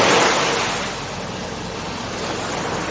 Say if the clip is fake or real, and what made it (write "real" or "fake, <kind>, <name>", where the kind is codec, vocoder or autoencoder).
real